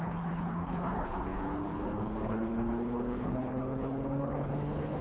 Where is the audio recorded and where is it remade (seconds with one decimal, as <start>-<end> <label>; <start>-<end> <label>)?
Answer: 0.0-5.0 remade